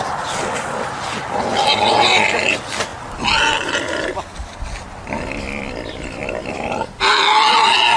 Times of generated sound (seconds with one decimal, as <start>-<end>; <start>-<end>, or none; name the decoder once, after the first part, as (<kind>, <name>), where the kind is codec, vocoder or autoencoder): none